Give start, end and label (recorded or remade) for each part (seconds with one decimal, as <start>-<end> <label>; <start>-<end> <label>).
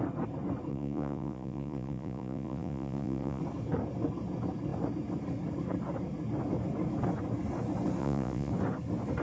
0.0-0.7 recorded; 0.7-3.4 remade; 3.4-8.0 recorded; 8.0-8.5 remade; 8.5-9.2 recorded